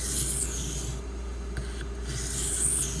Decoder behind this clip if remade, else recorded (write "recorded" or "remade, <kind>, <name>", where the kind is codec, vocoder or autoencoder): recorded